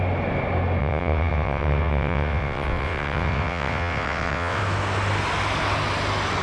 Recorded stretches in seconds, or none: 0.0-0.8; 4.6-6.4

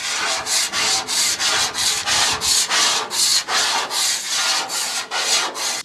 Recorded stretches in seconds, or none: 0.0-2.0; 2.5-5.8

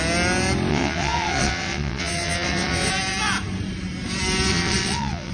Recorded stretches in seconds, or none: 0.0-0.7; 2.9-4.5

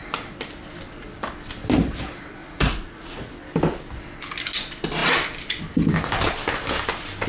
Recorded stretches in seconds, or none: 0.0-2.4; 3.3-7.3

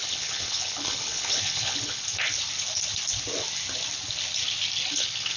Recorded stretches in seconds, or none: 2.0-4.9

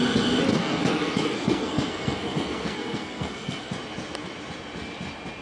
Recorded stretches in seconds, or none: 0.0-0.5; 3.7-5.4

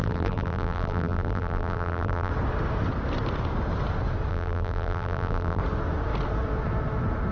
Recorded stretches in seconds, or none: 2.3-4.3; 5.6-7.3

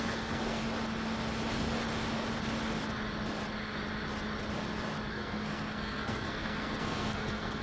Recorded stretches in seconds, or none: 0.6-5.1